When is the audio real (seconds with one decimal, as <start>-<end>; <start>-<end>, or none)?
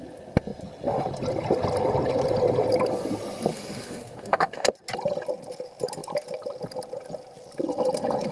0.0-3.5; 4.7-8.3